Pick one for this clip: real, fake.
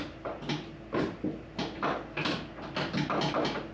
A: real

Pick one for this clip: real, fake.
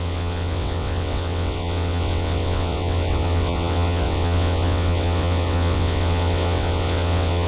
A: fake